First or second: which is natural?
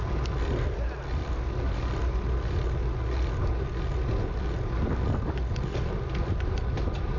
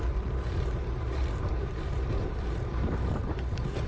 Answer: first